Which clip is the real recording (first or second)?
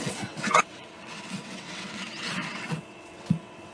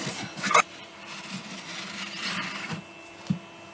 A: second